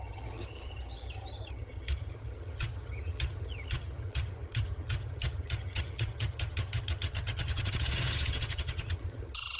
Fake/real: fake